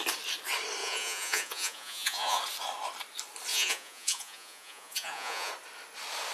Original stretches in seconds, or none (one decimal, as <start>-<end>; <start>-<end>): 0.0-0.8; 2.4-3.5; 5.5-6.3